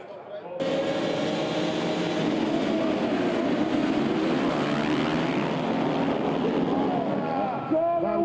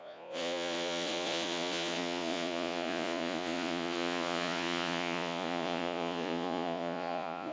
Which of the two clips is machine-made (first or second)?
second